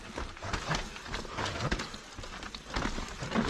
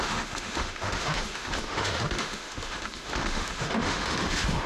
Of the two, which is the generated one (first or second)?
second